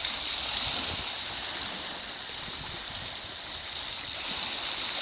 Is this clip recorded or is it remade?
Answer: recorded